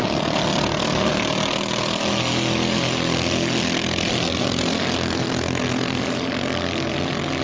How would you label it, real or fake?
real